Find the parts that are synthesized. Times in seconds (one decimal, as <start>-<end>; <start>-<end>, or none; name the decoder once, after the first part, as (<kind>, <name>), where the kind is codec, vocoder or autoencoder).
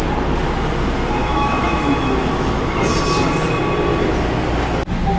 1.2-2.8 (autoencoder, DAC-VAE)